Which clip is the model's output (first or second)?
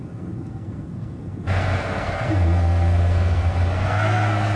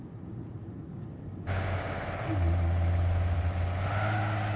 first